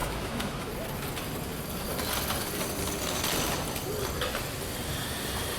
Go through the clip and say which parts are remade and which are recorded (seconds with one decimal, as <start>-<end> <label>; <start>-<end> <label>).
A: 0.0-0.7 remade; 0.7-5.6 recorded